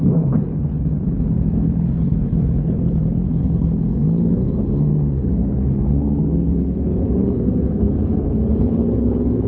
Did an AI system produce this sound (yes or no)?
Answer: yes